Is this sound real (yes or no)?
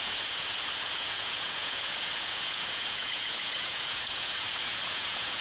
no